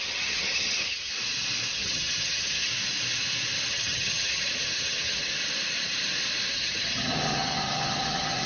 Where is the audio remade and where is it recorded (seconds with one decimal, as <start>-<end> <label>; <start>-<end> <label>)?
0.0-1.1 remade; 1.1-1.7 recorded; 1.7-2.7 remade; 2.7-3.7 recorded; 3.7-5.3 remade; 5.3-6.5 recorded; 6.5-8.5 remade